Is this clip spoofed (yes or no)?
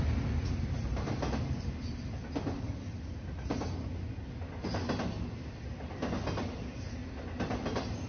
no